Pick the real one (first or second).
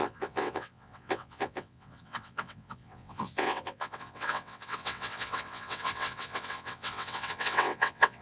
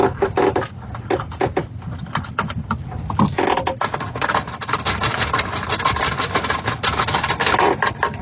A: second